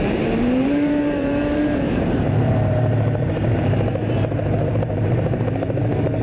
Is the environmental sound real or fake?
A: fake